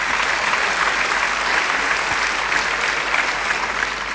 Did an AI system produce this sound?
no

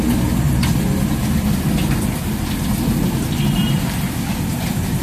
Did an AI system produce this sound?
no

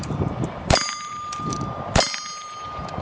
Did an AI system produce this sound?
yes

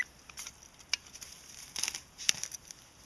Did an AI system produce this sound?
no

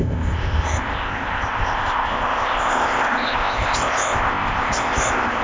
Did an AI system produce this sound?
yes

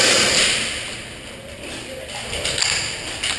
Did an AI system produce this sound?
no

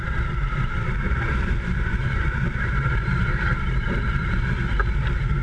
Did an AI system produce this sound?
yes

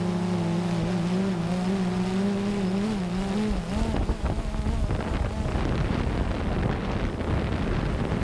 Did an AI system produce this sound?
no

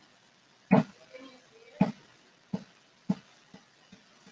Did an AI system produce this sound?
no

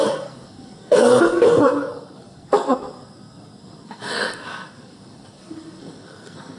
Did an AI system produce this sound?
yes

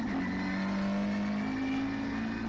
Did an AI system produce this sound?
no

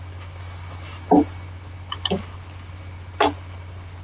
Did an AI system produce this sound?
no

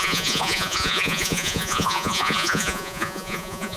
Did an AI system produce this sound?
yes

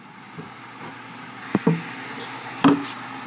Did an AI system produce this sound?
no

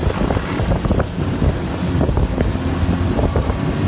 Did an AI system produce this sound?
no